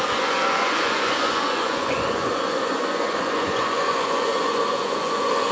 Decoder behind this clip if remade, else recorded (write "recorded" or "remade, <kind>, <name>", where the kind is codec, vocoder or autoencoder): remade, vocoder, Vocos